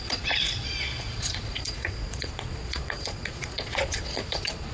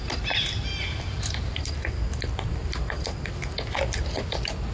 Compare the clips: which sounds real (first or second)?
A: second